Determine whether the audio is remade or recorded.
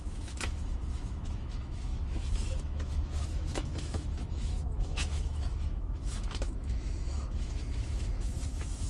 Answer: remade